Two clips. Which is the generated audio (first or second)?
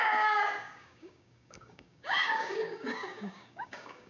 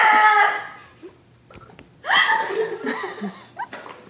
first